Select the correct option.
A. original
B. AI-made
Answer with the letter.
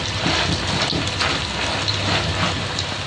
A